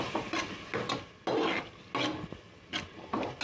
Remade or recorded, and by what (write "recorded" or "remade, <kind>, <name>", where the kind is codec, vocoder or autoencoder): recorded